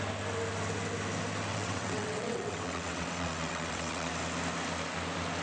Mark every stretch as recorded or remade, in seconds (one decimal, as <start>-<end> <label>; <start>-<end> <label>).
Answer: 0.0-1.5 recorded; 1.5-4.1 remade; 4.1-5.4 recorded